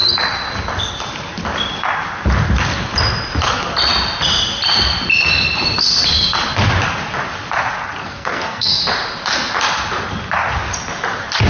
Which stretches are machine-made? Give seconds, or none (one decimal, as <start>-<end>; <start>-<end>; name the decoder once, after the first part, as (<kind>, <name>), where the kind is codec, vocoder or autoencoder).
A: 8.0-8.8 (codec, SNAC)